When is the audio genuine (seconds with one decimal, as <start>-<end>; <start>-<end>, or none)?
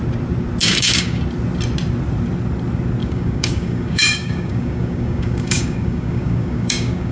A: 0.0-0.6; 1.2-3.0